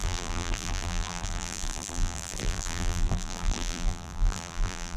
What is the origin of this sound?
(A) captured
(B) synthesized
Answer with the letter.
B